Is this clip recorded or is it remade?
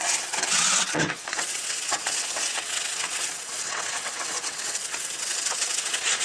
remade